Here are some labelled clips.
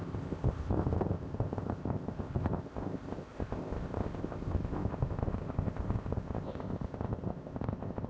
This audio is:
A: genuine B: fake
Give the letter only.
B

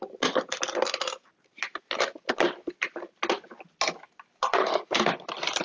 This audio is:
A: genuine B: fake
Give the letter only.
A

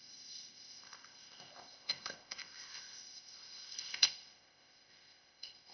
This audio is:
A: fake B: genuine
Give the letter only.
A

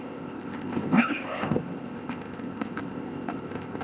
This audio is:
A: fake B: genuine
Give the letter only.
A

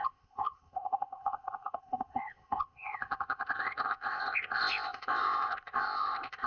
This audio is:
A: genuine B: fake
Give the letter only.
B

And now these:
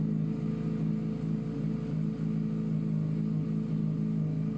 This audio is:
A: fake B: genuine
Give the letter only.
B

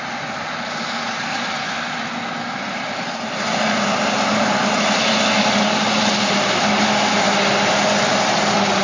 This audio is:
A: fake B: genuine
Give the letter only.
B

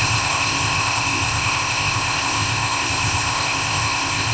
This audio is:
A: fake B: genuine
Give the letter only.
A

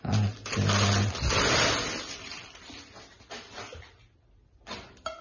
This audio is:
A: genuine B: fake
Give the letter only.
A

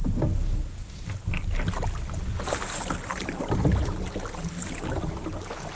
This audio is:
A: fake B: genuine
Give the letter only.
B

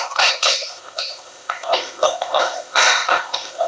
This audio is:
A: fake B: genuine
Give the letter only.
A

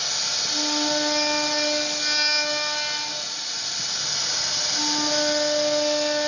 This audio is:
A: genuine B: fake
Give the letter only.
A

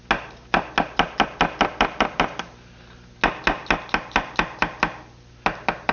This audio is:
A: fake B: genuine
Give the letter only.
B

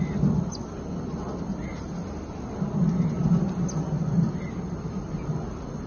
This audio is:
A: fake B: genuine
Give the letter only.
B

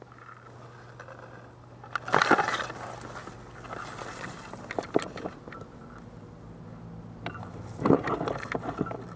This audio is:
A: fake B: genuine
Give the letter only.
B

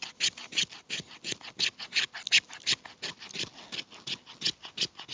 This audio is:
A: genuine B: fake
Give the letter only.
A